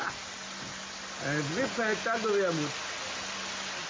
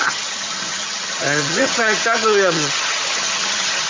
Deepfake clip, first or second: second